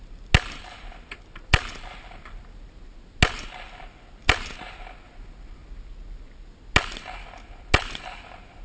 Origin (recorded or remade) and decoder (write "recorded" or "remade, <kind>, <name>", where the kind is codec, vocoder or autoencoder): recorded